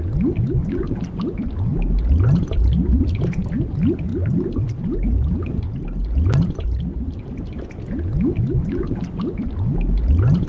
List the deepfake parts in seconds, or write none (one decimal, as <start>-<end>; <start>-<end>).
none